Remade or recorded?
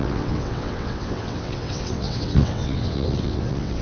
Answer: remade